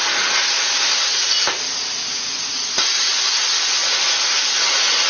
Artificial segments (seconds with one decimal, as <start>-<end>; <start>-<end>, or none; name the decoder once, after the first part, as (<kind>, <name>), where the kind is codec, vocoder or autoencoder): none